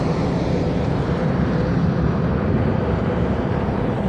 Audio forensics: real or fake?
fake